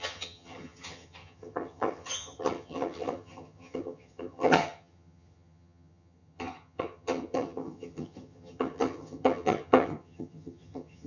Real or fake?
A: fake